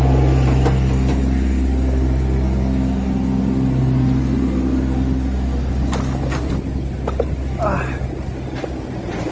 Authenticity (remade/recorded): recorded